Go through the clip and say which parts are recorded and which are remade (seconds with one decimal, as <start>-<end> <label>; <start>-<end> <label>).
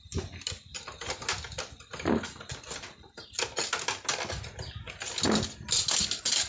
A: 0.0-6.5 recorded